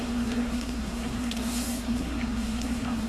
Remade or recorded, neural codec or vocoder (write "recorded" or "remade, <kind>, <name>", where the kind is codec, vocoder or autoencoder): remade, codec, SNAC